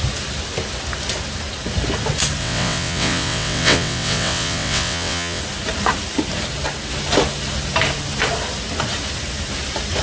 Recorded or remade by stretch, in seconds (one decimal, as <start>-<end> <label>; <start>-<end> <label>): 0.0-2.4 recorded; 2.4-5.4 remade; 5.4-10.0 recorded